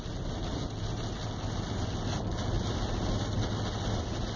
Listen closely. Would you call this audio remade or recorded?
recorded